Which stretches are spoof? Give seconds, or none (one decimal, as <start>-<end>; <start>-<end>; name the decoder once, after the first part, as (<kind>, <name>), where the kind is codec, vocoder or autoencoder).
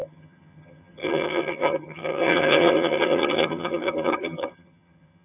0.0-5.2 (vocoder, HiFi-GAN)